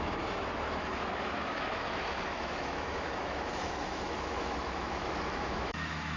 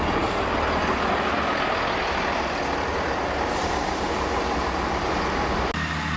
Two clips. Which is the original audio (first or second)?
second